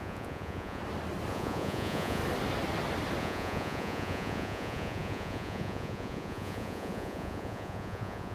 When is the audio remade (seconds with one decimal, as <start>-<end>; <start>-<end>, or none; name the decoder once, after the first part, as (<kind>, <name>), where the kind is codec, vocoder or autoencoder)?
0.0-0.8 (vocoder, Vocos); 1.3-2.2; 3.2-8.3